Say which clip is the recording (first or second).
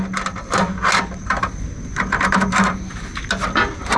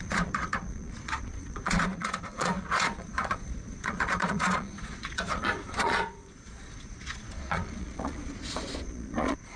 first